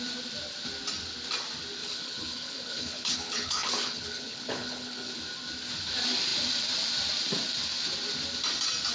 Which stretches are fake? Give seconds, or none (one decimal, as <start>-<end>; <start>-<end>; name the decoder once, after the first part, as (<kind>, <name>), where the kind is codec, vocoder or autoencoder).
1.8-5.2 (codec, HILCodec)